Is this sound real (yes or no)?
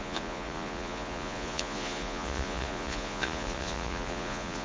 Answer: no